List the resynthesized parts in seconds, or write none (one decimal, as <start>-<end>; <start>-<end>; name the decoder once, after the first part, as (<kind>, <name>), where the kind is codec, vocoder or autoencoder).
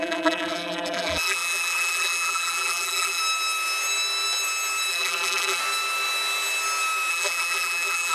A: 0.0-3.2 (vocoder, BigVGAN v2); 4.9-5.6; 7.1-8.1